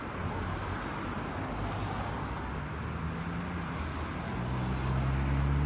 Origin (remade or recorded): recorded